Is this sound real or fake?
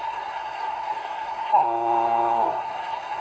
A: fake